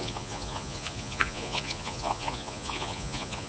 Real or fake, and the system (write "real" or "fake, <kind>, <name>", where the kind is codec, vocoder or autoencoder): fake, vocoder, Vocos